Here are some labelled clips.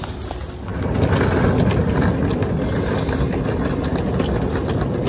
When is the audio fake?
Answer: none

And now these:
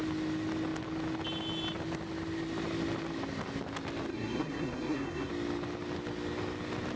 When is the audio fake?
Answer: 4.1-5.3 (codec, SNAC)

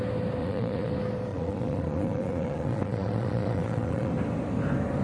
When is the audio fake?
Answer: 0.4-0.9 (vocoder, Vocos); 1.3-4.1